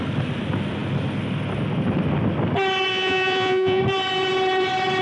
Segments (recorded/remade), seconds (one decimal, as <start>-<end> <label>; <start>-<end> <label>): 0.0-2.9 recorded; 2.9-3.8 remade; 3.8-5.0 recorded